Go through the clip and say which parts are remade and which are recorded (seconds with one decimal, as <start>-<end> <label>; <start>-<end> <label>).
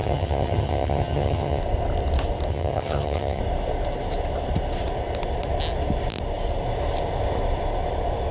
0.0-1.6 remade; 1.6-2.5 recorded; 2.5-3.4 remade; 3.4-8.3 recorded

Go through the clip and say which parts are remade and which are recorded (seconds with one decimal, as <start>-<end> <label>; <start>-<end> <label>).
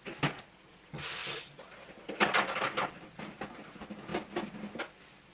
0.0-5.3 recorded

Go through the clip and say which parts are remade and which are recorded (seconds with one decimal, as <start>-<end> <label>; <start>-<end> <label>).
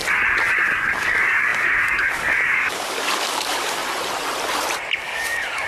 0.0-1.0 recorded; 1.0-3.8 remade; 3.8-5.0 recorded; 5.0-5.7 remade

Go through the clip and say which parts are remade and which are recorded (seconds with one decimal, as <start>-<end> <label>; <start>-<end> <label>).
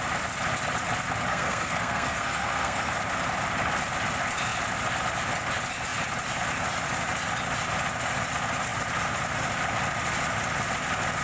0.0-1.3 recorded; 1.3-2.9 remade; 2.9-11.2 recorded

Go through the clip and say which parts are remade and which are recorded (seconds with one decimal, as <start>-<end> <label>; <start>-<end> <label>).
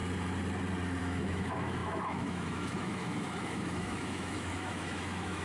0.0-1.0 recorded; 1.0-5.4 remade